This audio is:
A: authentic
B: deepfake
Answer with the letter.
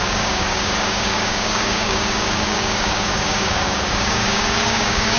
B